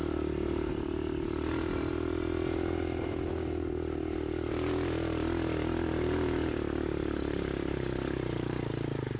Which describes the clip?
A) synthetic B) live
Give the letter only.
B